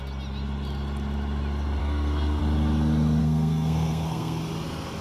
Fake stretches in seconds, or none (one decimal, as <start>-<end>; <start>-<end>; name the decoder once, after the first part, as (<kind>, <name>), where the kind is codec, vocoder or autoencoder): 1.8-2.4 (codec, SNAC); 3.2-4.4